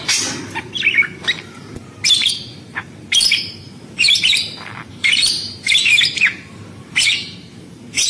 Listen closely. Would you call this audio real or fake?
fake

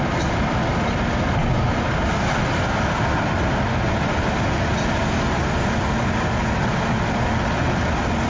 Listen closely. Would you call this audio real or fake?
real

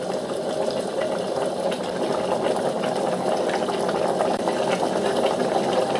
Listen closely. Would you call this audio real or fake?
real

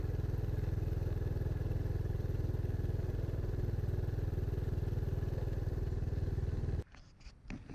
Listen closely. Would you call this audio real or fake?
real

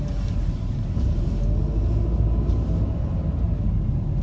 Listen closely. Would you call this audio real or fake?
real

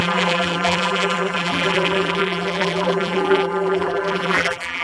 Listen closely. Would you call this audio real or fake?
fake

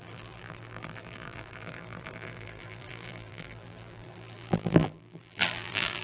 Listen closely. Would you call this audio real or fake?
fake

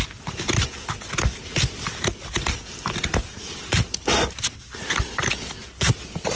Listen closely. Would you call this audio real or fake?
real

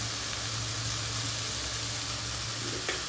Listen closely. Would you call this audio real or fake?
real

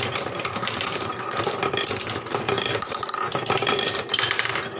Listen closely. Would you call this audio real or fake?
fake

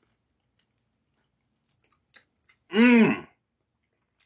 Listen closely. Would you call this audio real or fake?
real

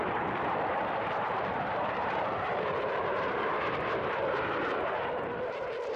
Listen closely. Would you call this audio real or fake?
fake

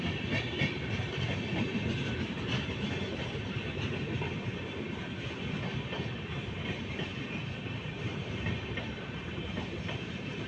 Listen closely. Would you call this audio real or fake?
fake